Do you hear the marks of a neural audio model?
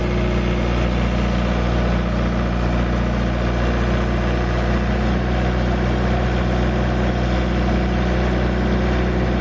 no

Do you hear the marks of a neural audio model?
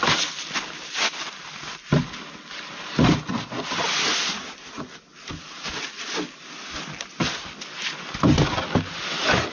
no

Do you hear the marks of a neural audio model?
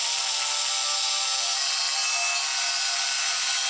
no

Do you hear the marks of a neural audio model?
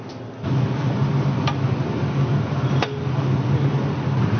no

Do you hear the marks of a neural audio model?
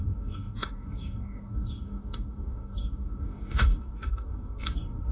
yes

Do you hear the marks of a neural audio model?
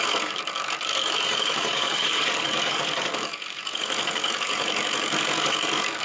yes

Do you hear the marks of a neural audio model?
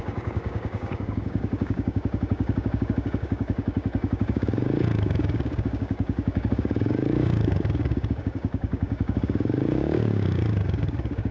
yes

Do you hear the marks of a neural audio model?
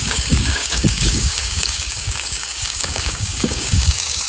yes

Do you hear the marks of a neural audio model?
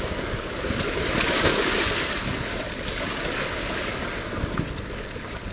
yes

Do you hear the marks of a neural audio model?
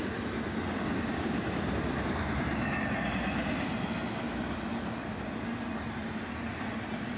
no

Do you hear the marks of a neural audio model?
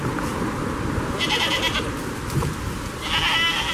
no